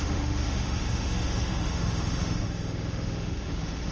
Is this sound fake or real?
fake